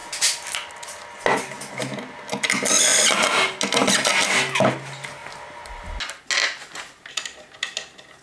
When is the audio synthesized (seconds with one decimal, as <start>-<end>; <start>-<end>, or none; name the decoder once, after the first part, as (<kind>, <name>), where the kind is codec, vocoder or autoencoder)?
none